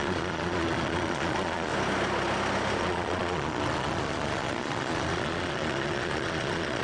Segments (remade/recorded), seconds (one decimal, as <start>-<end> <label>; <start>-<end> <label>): 0.0-1.7 remade; 1.7-2.8 recorded; 2.8-6.8 remade